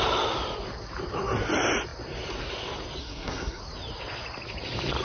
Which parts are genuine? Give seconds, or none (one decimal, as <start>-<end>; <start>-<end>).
0.0-3.0; 3.6-5.0